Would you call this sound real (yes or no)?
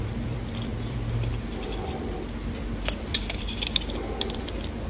no